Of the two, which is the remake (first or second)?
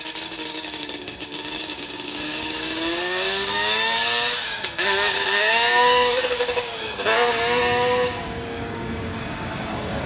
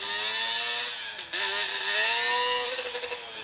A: first